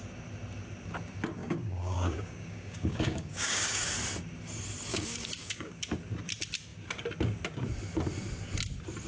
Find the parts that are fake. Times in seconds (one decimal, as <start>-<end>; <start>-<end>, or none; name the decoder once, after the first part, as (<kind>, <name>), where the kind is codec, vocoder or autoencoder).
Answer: 1.4-3.9 (codec, DAC); 4.9-5.8